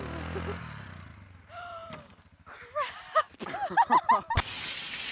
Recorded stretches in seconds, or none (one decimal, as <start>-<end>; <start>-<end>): 0.0-5.1